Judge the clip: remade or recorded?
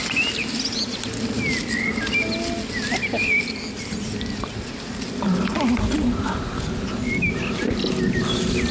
recorded